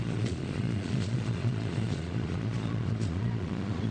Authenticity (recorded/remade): remade